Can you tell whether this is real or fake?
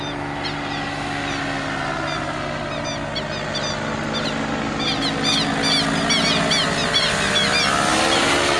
real